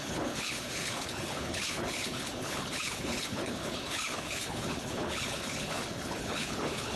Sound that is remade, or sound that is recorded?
remade